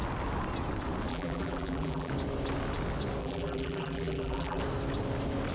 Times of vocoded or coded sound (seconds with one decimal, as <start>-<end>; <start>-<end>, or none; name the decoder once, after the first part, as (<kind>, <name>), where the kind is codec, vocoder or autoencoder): 1.1-2.1 (vocoder, BigVGAN v2); 3.2-4.6